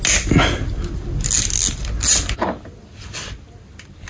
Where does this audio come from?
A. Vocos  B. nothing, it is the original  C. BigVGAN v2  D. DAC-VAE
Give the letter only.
B